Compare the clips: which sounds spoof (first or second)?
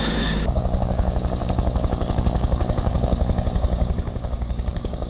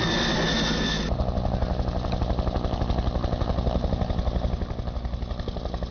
first